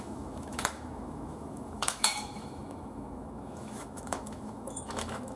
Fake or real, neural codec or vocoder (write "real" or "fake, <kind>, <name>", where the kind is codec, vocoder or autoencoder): fake, autoencoder, DAC-VAE